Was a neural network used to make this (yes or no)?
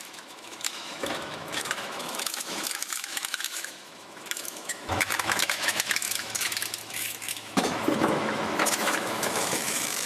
yes